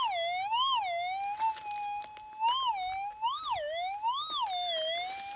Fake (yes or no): no